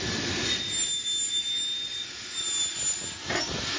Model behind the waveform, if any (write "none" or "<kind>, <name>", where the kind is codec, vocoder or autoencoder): none